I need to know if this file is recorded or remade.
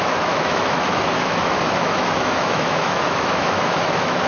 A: remade